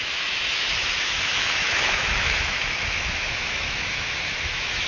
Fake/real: fake